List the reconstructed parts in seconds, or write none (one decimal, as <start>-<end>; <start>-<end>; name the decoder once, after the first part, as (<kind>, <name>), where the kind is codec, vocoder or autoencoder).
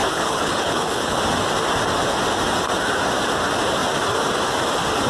0.0-1.2 (codec, HILCodec)